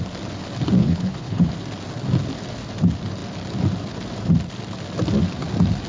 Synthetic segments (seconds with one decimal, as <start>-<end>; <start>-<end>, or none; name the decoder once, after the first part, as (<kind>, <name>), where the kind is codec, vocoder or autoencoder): 0.8-1.5 (codec, HILCodec)